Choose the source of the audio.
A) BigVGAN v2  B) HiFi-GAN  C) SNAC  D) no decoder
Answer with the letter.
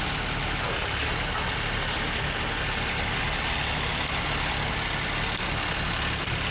D